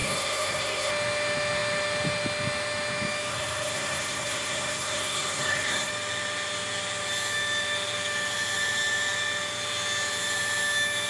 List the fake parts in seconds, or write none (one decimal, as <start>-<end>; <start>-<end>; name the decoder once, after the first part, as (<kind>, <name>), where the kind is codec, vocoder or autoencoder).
0.0-0.9 (codec, SNAC); 3.3-5.9